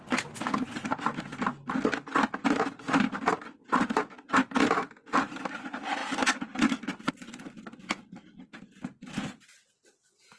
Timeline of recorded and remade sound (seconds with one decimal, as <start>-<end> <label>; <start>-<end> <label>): 0.0-10.4 recorded